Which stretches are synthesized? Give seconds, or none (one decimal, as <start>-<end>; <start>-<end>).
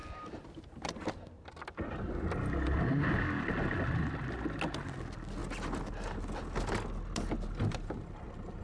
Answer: none